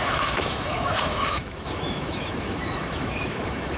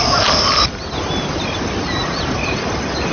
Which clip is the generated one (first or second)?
first